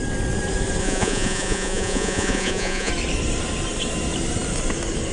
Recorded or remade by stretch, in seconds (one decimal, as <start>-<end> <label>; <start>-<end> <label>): 0.0-0.8 recorded; 0.8-2.9 remade; 2.9-5.1 recorded